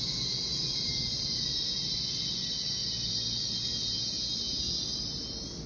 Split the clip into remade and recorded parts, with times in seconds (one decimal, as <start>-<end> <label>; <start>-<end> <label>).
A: 0.0-5.7 recorded